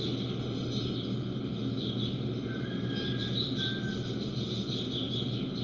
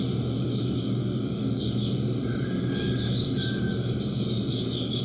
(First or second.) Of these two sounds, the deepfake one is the second